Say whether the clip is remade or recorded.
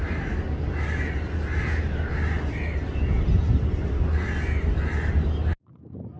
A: recorded